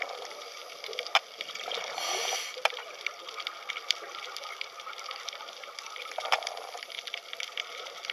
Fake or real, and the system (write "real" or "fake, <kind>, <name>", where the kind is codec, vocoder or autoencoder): real